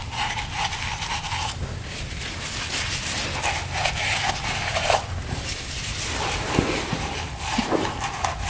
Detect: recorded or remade recorded